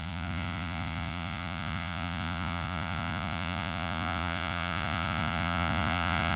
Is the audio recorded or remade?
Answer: remade